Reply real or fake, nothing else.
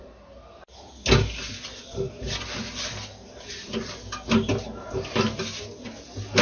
real